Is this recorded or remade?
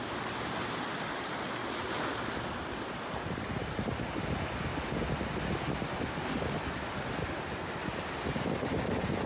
recorded